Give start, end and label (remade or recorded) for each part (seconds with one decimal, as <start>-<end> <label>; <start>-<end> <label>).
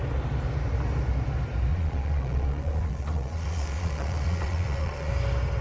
0.0-1.7 recorded; 1.7-5.1 remade; 5.1-5.6 recorded